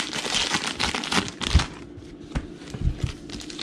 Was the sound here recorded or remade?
recorded